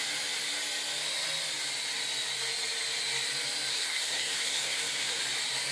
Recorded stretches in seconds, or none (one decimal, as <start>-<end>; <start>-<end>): 0.0-3.7; 5.2-5.7

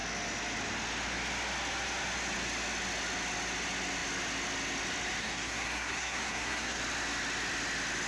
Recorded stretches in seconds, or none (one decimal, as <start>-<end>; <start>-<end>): 0.0-5.2; 6.8-8.1